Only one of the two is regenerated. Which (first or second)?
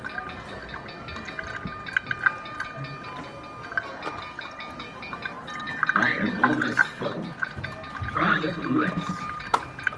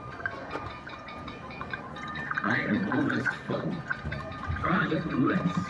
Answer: second